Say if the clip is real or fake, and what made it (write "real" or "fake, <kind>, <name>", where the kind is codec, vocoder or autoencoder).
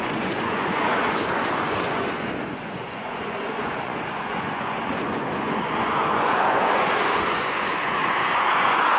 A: fake, vocoder, Vocos